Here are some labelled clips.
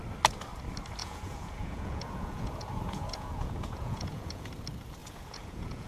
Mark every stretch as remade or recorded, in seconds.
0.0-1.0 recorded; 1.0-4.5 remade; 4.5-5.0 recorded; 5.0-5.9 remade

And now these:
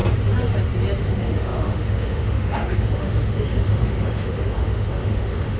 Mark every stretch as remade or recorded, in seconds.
0.0-1.0 recorded; 1.0-5.6 remade

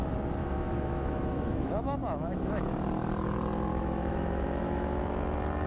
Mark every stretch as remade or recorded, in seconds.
0.0-0.4 recorded; 0.4-2.6 remade; 2.6-3.7 recorded; 3.7-5.0 remade; 5.0-5.7 recorded

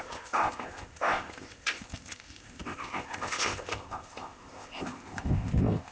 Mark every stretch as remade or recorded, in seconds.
0.0-5.9 remade

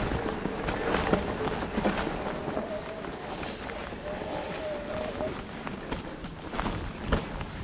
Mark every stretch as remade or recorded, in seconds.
0.0-7.6 recorded

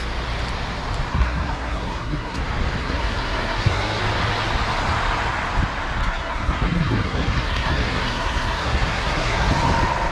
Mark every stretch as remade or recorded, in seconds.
0.0-1.1 recorded; 1.1-2.4 remade; 2.4-2.8 recorded; 2.8-4.0 remade; 4.0-6.0 recorded; 6.0-9.5 remade; 9.5-10.1 recorded

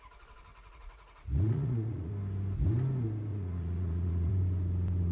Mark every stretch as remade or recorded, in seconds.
0.0-0.5 recorded; 0.5-2.1 remade; 2.1-3.3 recorded; 3.3-4.3 remade; 4.3-5.1 recorded

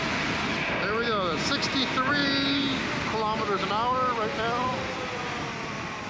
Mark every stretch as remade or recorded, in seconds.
0.0-6.1 recorded